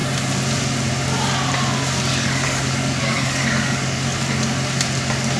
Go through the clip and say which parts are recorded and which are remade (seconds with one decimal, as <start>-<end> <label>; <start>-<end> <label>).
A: 0.0-2.1 recorded; 2.1-4.3 remade; 4.3-5.4 recorded